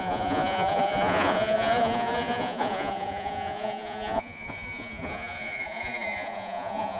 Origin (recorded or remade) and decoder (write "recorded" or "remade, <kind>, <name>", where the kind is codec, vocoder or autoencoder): remade, vocoder, Vocos